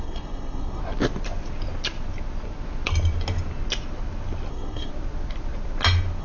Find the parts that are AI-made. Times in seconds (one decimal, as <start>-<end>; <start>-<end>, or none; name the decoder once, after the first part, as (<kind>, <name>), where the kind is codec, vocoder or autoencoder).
0.0-0.8 (codec, SNAC); 4.5-4.9